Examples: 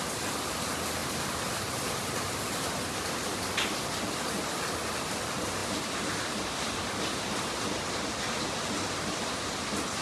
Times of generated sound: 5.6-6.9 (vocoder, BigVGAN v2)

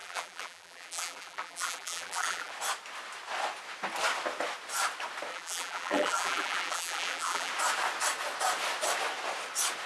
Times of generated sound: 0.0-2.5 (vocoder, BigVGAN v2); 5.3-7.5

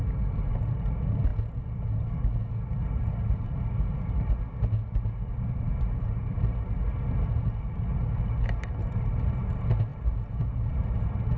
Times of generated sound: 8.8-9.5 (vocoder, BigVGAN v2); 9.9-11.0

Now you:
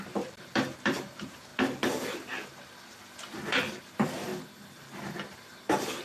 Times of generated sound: 0.0-1.5 (vocoder, BigVGAN v2); 3.8-4.3; 5.0-6.0

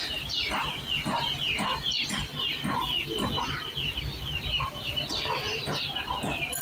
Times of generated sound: none

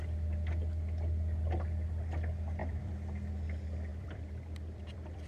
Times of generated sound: 2.6-3.3 (vocoder, BigVGAN v2); 3.9-5.3